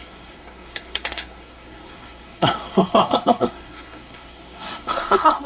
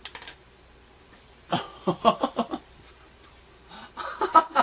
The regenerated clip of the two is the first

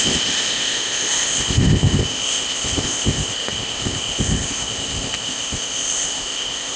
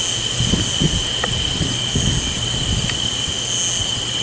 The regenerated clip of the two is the first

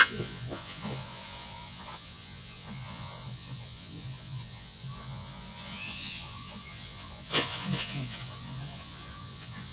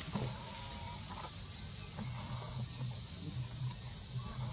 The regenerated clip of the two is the first